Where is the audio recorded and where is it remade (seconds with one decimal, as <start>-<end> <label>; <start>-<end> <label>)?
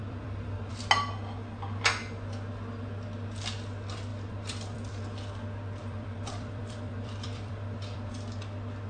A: 0.0-0.7 remade; 0.7-4.1 recorded; 4.1-5.0 remade; 5.0-5.8 recorded; 5.8-8.1 remade; 8.1-8.9 recorded